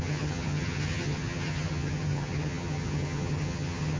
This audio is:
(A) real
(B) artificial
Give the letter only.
B